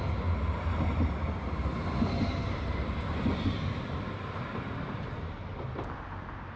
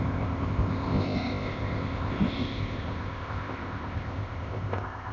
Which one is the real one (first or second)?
first